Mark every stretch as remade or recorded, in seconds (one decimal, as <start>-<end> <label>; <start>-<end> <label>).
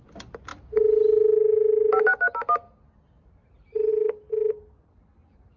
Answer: 0.0-5.6 recorded